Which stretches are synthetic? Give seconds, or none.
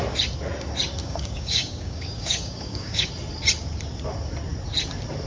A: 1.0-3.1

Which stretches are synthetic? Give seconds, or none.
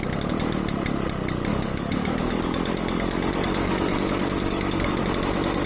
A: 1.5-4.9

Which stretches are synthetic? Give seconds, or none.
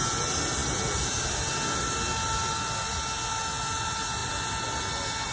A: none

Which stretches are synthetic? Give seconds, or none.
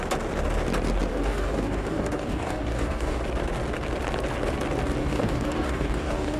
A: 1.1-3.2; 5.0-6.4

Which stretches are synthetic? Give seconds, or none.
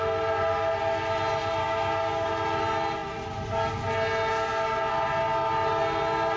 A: 1.6-2.3